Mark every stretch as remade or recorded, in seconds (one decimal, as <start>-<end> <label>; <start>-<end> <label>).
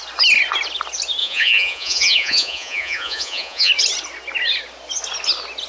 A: 0.0-1.2 recorded; 1.2-3.7 remade; 3.7-5.7 recorded